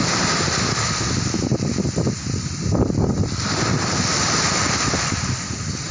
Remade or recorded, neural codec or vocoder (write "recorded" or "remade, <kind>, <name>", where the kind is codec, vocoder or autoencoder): remade, vocoder, BigVGAN v2